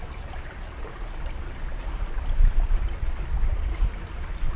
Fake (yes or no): no